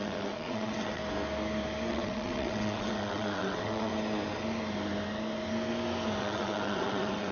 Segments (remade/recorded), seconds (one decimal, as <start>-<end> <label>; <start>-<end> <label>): 0.0-1.0 remade; 1.0-1.9 recorded; 1.9-3.9 remade; 3.9-6.2 recorded; 6.2-7.3 remade